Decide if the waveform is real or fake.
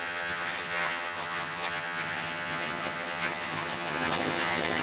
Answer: fake